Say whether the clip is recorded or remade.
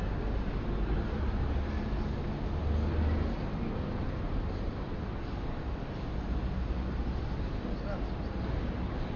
recorded